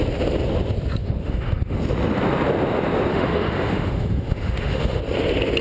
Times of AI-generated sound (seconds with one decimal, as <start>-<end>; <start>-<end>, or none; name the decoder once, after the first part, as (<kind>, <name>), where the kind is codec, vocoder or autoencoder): 1.0-1.8 (autoencoder, DAC-VAE); 3.1-5.0